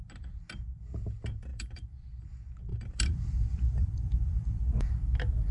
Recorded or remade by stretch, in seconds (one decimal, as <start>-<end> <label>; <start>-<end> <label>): 0.0-1.5 recorded; 1.5-2.1 remade; 2.1-2.7 recorded; 2.7-4.9 remade; 4.9-5.5 recorded